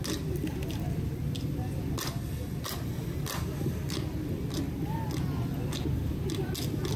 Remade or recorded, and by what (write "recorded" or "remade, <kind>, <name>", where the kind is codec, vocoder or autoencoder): recorded